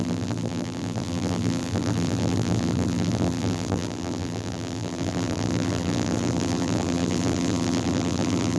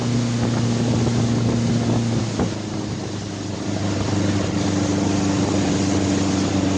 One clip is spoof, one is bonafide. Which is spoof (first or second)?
first